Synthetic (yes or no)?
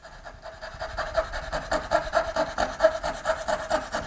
no